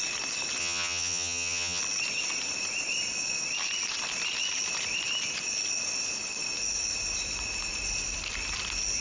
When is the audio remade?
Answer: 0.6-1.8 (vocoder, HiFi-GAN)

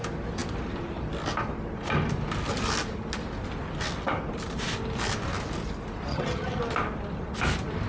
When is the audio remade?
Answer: 6.1-6.6 (vocoder, HiFi-GAN)